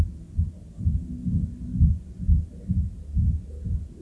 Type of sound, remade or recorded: recorded